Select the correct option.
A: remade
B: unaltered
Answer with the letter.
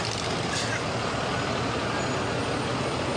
B